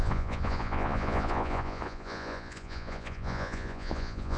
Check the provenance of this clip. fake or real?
fake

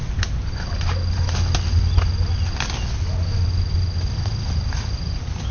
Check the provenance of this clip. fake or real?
real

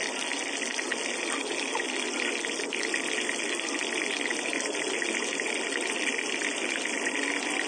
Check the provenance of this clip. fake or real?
real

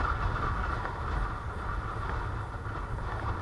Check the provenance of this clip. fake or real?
real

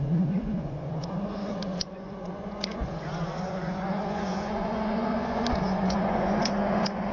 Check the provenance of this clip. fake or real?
fake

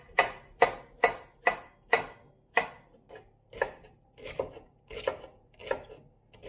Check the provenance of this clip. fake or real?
real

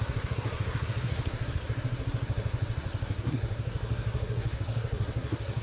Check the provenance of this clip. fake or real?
fake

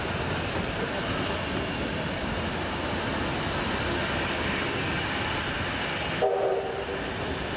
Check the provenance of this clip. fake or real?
real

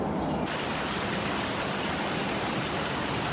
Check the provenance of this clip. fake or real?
real